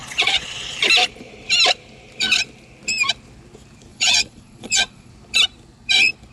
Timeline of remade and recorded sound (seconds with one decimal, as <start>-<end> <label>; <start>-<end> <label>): 0.0-0.8 remade; 0.8-3.9 recorded; 3.9-5.1 remade; 5.1-6.3 recorded